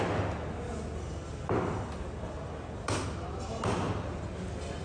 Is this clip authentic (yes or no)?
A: yes